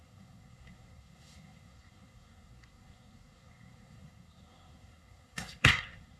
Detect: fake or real fake